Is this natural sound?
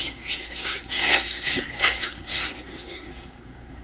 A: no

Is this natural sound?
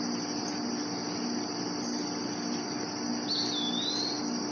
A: yes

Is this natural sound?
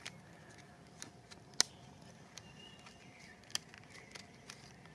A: yes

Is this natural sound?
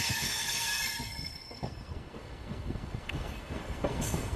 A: no